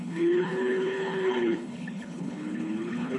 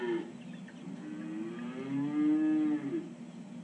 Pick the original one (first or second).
second